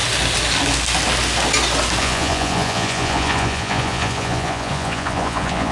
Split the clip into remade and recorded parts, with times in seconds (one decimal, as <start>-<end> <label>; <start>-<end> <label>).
0.0-2.0 recorded; 2.0-5.7 remade